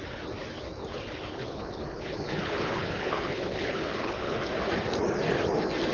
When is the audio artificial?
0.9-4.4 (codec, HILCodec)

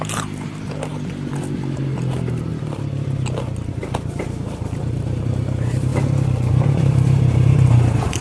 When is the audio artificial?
0.0-2.5 (vocoder, BigVGAN v2); 3.7-5.9; 6.5-8.2

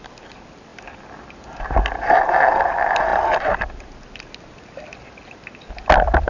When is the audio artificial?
none

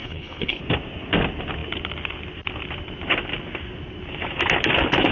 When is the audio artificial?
0.0-0.6 (codec, HILCodec)

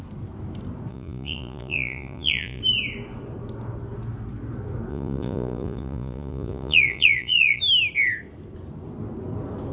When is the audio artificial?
0.9-2.6 (vocoder, Vocos); 4.9-7.6

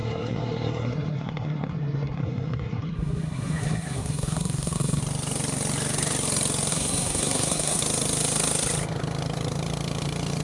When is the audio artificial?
0.0-5.0 (codec, SNAC); 6.7-7.8

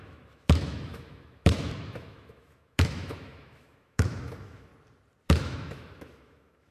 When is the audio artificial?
0.0-4.7 (autoencoder, DAC-VAE); 5.4-6.7